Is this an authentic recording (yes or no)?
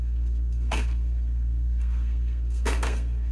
no